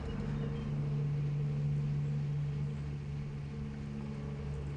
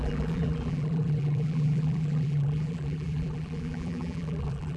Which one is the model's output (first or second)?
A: second